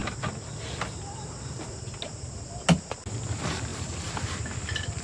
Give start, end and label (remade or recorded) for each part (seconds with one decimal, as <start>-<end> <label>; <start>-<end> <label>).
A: 0.0-5.0 recorded